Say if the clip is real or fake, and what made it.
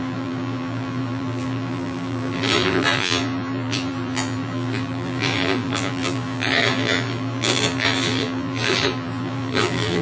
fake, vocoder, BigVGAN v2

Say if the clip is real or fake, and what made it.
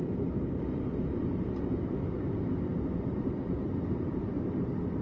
real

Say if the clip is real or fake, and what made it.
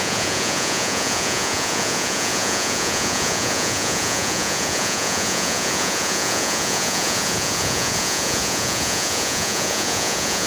fake, vocoder, Vocos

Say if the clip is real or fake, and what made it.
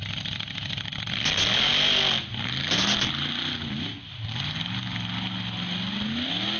real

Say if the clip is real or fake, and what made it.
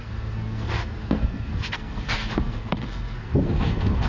fake, codec, SNAC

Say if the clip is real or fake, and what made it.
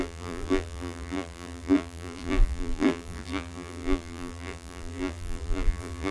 fake, vocoder, BigVGAN v2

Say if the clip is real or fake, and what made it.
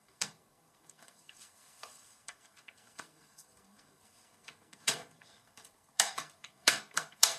fake, codec, SNAC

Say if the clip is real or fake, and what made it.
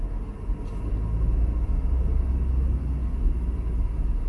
real